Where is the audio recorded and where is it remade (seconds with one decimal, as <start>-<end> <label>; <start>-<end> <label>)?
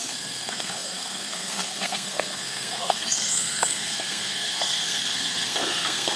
0.0-6.2 remade